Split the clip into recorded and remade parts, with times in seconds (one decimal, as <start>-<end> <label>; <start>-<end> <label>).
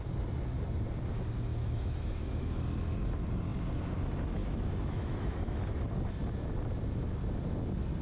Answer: 0.0-1.5 recorded; 1.5-2.6 remade; 2.6-4.4 recorded; 4.4-5.6 remade; 5.6-8.0 recorded